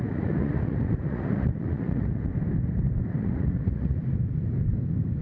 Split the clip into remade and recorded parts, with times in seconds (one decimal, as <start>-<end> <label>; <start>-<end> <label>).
0.0-2.3 remade; 2.3-3.1 recorded; 3.1-4.0 remade; 4.0-5.2 recorded